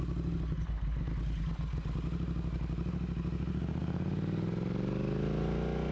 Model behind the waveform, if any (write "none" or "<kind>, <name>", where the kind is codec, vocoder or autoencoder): none